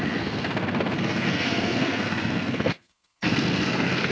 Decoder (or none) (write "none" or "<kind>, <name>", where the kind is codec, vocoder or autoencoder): codec, SNAC